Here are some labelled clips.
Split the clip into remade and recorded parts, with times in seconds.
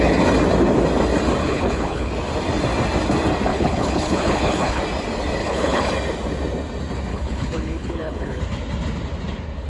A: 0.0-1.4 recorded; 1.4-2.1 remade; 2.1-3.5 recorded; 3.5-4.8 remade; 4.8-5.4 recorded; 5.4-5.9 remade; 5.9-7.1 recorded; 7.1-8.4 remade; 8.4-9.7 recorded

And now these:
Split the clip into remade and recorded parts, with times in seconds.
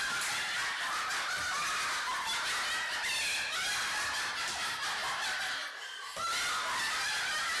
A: 0.0-7.6 recorded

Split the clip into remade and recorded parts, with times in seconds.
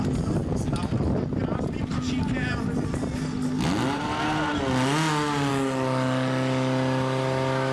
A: 0.0-7.7 recorded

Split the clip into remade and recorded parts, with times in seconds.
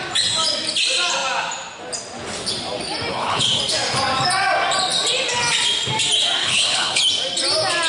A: 0.0-3.1 recorded; 3.1-3.6 remade; 3.6-6.4 recorded; 6.4-7.0 remade; 7.0-7.9 recorded